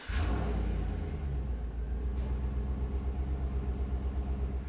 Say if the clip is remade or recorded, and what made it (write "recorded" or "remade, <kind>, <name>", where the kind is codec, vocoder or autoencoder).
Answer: recorded